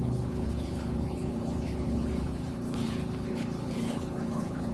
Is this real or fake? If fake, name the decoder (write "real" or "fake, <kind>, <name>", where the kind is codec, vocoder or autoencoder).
fake, codec, HILCodec